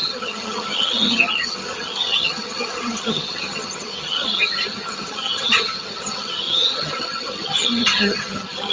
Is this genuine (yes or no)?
no